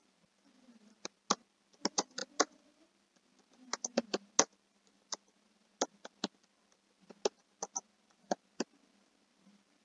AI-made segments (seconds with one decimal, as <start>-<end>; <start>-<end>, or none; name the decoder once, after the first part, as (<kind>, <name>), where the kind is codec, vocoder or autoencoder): none